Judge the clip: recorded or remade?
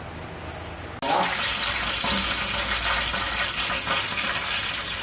recorded